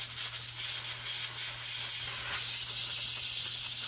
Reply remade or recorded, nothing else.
recorded